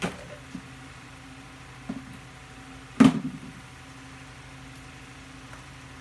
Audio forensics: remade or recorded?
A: recorded